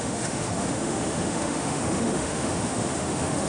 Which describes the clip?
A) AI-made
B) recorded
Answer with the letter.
A